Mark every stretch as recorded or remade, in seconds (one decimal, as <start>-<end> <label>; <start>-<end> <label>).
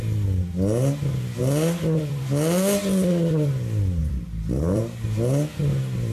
0.0-1.4 recorded; 1.4-2.2 remade; 2.2-4.0 recorded; 4.0-4.8 remade; 4.8-6.1 recorded